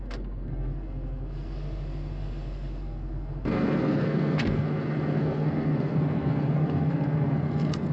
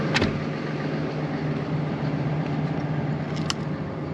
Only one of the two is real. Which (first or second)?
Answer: second